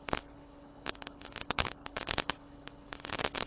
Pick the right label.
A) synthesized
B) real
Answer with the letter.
A